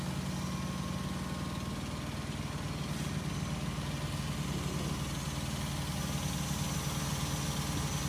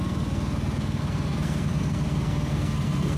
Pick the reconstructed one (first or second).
second